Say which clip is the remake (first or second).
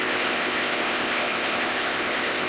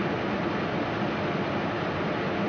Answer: first